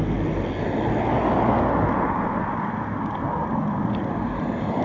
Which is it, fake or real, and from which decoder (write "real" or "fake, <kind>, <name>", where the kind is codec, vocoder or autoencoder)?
real